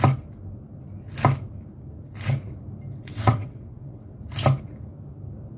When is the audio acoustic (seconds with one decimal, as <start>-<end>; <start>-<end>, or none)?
0.0-3.0; 4.2-5.6